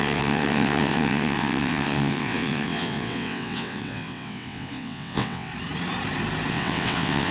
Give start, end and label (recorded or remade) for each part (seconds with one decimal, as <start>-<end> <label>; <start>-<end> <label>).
0.0-5.5 remade; 5.5-6.5 recorded; 6.5-7.3 remade